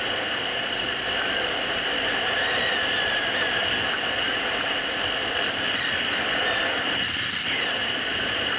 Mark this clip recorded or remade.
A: recorded